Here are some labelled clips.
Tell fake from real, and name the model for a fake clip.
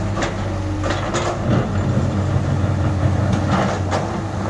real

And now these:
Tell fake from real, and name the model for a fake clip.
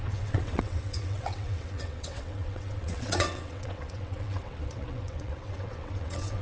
fake, vocoder, WaveNeXt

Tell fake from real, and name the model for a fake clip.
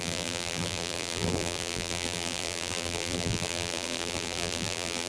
fake, vocoder, BigVGAN v2